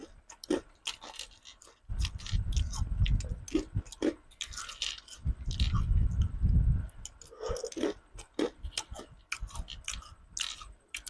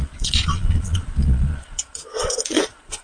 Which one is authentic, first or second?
first